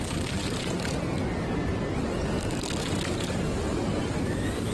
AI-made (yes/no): no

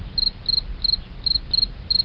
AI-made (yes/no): no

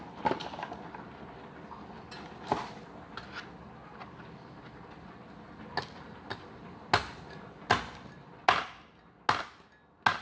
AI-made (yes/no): no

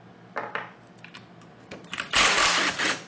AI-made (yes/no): no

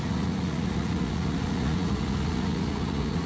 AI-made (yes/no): yes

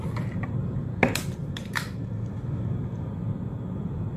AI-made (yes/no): yes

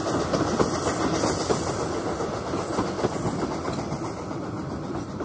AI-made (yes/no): no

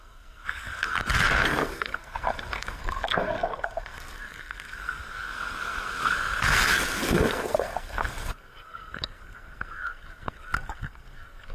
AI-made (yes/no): yes